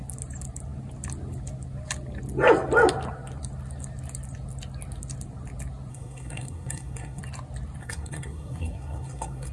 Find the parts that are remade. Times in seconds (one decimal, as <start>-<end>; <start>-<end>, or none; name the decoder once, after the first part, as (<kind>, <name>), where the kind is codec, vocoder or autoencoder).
5.9-7.2 (codec, SNAC); 7.8-9.5

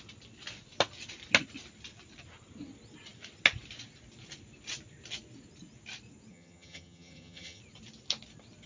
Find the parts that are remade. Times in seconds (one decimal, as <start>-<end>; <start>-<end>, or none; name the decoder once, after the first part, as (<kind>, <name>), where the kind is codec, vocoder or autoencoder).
6.3-7.6 (vocoder, HiFi-GAN)

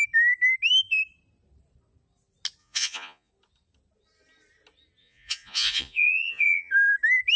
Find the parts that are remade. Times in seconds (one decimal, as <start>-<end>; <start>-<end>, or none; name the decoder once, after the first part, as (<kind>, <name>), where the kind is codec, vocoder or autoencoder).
2.6-3.3 (vocoder, Vocos); 5.0-6.7

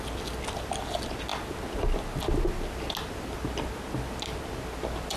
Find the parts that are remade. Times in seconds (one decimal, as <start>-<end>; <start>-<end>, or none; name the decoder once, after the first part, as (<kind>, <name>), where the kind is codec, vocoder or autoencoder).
none

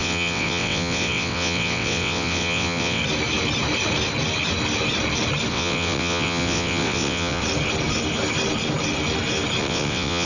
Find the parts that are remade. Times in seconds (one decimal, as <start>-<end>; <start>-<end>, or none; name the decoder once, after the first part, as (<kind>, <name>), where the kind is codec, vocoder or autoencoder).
0.0-3.0 (vocoder, WaveNeXt); 5.5-7.4; 9.6-10.3

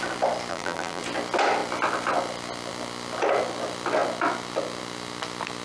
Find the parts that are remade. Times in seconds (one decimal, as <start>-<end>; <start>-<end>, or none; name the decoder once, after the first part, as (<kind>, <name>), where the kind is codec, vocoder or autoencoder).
0.5-1.0 (vocoder, BigVGAN v2)

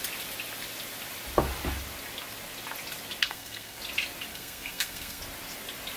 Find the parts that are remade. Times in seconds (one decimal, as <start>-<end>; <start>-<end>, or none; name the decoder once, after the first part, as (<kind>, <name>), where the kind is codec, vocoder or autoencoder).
3.2-3.8 (codec, SNAC); 4.3-5.2